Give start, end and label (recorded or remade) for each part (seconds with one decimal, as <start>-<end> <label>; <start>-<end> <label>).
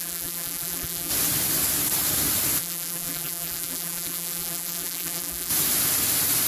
0.0-1.1 remade; 1.1-2.6 recorded; 2.6-5.5 remade; 5.5-6.5 recorded